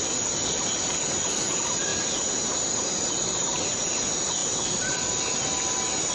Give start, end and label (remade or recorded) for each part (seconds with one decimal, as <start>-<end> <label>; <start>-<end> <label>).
0.0-6.1 recorded